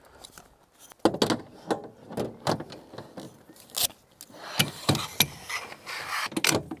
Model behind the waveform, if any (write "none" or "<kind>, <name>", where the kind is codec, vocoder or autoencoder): none